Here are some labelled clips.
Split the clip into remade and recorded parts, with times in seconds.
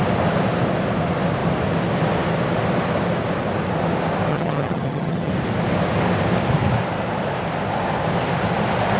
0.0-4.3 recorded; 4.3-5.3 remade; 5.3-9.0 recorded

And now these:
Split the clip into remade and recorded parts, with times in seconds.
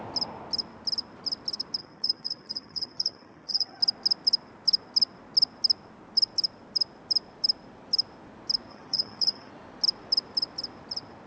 0.0-1.8 recorded; 1.8-3.8 remade; 3.8-8.7 recorded; 8.7-9.5 remade; 9.5-11.3 recorded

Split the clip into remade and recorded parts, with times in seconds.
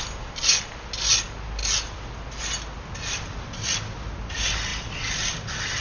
0.0-5.8 recorded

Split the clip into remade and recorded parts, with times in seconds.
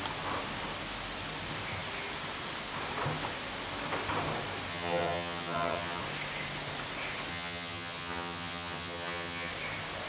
0.0-4.7 recorded; 4.7-6.0 remade; 6.0-7.3 recorded; 7.3-9.5 remade; 9.5-10.1 recorded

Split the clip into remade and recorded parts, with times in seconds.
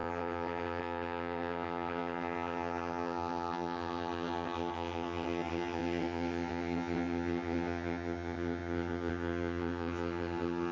0.0-10.7 remade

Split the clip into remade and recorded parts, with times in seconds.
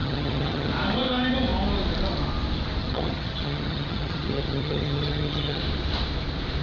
0.0-0.7 remade; 0.7-2.8 recorded; 2.8-5.6 remade; 5.6-6.6 recorded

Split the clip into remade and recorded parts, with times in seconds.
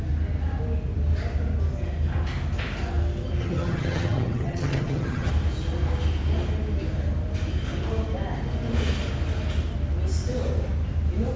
0.0-3.4 recorded; 3.4-5.3 remade; 5.3-11.4 recorded